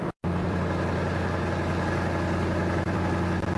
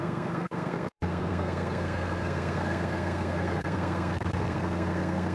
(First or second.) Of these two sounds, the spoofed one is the second